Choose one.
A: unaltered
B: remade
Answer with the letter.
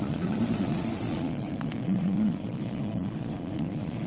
B